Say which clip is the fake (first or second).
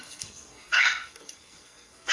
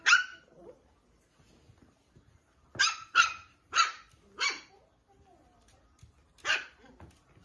first